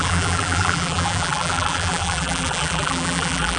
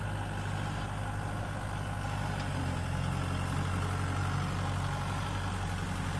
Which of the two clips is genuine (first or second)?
second